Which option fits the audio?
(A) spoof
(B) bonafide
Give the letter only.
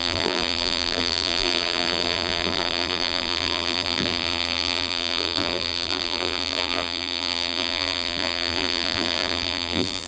A